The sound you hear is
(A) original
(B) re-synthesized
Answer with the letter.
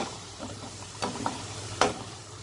B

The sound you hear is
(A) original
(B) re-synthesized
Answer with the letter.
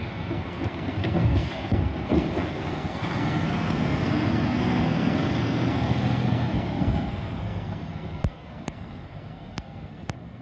B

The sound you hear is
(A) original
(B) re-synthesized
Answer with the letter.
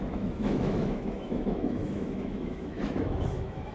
B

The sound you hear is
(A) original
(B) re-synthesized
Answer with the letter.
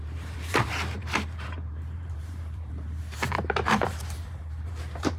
B